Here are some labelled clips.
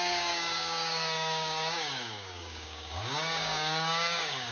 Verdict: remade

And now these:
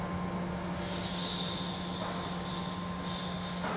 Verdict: recorded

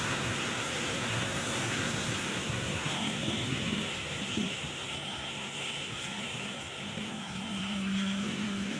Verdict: remade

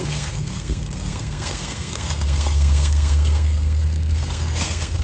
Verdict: remade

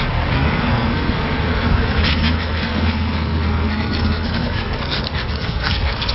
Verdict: remade